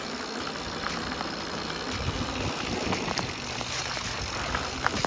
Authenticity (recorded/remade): remade